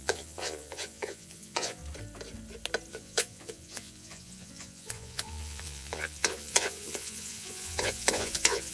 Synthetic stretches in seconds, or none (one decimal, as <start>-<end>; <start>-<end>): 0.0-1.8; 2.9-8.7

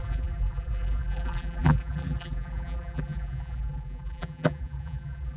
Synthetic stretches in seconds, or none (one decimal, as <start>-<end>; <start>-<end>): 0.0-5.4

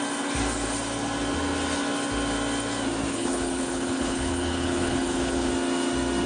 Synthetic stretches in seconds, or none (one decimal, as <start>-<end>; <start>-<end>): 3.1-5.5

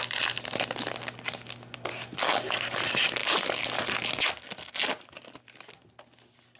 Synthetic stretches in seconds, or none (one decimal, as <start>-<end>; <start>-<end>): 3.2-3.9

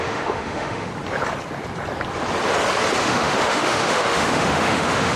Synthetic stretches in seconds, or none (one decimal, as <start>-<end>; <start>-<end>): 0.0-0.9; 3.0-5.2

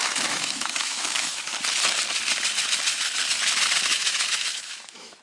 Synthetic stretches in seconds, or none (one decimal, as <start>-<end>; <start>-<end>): 0.0-1.5; 3.9-5.2